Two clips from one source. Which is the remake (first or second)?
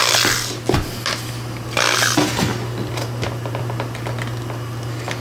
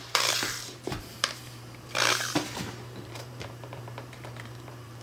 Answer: second